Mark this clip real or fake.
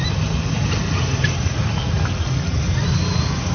real